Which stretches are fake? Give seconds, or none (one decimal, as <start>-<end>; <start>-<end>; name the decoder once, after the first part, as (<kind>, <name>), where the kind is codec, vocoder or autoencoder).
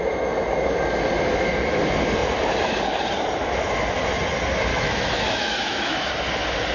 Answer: 4.7-6.1 (autoencoder, DAC-VAE)